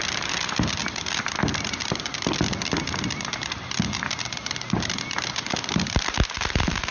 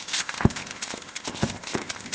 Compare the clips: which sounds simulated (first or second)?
second